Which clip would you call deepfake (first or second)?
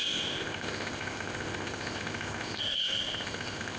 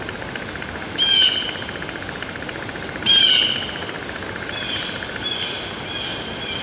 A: first